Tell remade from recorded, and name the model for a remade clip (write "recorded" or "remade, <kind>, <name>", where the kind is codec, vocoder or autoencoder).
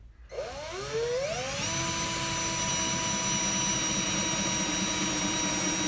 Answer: recorded